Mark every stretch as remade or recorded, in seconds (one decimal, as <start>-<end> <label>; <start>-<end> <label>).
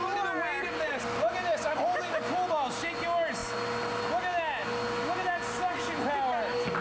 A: 0.0-6.8 recorded